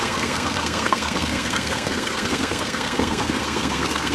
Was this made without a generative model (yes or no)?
no